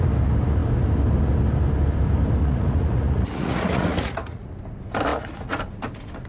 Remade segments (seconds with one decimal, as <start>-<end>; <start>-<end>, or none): 2.4-4.5; 5.1-5.6